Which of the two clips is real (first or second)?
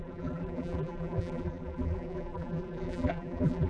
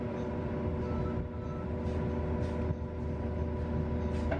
second